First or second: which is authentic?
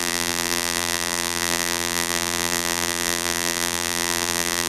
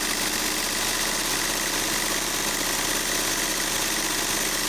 second